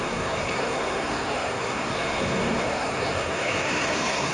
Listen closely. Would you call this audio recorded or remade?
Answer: remade